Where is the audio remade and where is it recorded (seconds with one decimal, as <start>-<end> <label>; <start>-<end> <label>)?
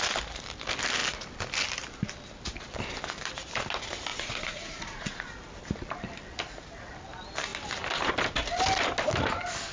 0.0-4.1 recorded; 4.1-5.2 remade; 5.2-9.7 recorded